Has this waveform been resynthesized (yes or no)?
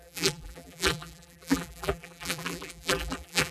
yes